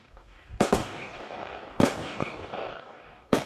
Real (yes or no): no